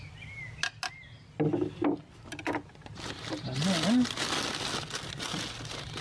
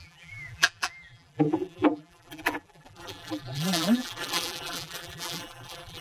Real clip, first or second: first